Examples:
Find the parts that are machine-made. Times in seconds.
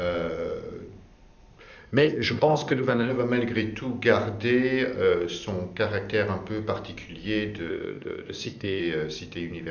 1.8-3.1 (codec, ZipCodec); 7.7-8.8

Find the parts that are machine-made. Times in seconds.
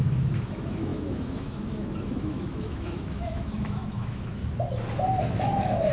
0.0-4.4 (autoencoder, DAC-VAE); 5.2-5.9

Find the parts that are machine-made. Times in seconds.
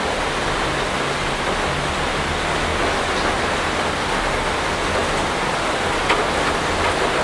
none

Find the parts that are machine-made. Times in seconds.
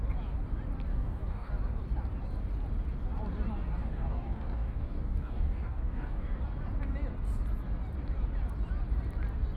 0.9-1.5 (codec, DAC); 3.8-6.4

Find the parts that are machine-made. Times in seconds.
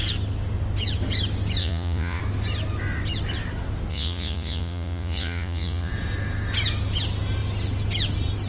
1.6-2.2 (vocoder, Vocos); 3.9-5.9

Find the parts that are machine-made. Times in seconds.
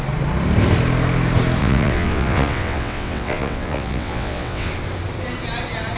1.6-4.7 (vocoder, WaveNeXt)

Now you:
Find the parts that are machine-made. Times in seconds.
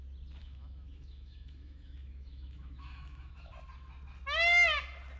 0.4-3.5 (autoencoder, DAC-VAE)